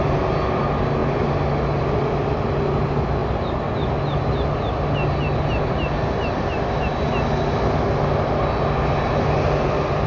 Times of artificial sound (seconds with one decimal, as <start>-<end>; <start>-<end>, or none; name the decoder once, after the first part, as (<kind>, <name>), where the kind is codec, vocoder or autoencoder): none